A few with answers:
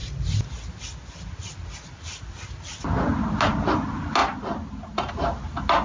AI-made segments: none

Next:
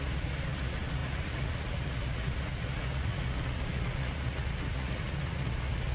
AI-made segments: 0.0-5.9 (vocoder, Vocos)

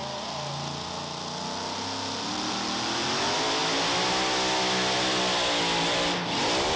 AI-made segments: none

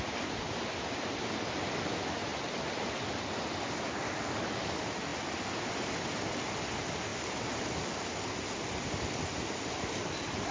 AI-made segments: none

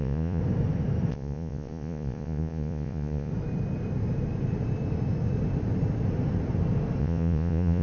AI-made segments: 0.0-0.4 (vocoder, Vocos); 1.1-3.3; 7.0-7.8

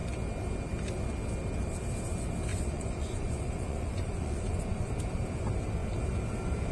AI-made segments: 2.5-4.9 (vocoder, Vocos)